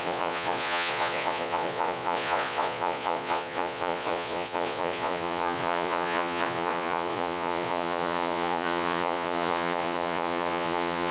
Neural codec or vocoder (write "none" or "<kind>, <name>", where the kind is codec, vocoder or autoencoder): vocoder, Vocos